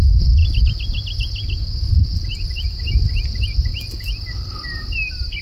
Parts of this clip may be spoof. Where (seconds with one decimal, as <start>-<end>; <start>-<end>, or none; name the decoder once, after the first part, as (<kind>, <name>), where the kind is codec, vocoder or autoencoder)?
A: none